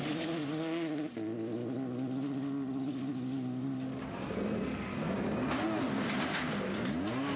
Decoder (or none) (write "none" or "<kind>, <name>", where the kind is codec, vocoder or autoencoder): none